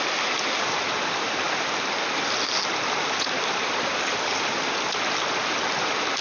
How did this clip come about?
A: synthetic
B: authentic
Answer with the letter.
B